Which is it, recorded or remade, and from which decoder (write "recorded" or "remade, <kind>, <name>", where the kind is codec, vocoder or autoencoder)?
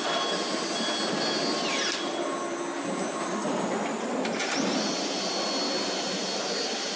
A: recorded